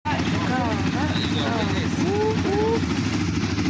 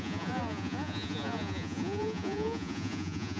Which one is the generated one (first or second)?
second